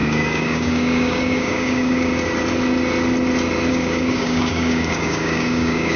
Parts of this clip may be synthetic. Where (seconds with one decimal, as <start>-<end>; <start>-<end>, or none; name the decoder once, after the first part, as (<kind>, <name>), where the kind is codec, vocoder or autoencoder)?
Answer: 0.0-2.1 (codec, DAC); 3.7-6.0